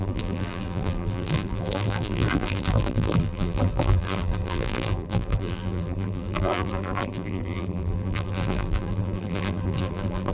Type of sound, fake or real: fake